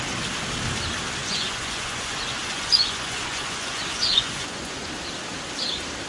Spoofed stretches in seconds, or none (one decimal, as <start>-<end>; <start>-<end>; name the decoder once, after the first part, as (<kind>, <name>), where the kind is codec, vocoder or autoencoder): 1.2-4.9 (vocoder, Vocos)